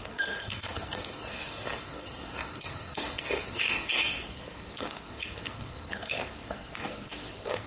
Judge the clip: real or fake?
fake